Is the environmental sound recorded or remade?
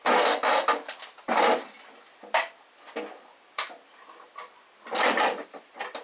remade